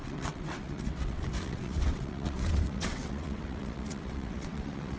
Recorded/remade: remade